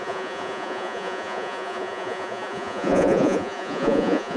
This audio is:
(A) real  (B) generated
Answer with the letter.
B